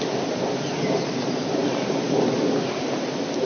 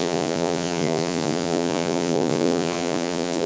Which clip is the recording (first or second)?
first